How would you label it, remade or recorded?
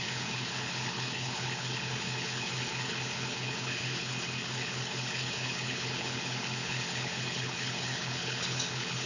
remade